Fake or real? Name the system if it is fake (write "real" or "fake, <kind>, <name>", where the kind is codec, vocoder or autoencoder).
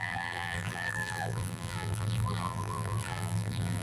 fake, vocoder, BigVGAN v2